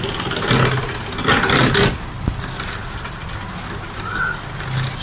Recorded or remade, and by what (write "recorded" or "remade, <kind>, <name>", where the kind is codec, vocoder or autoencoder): recorded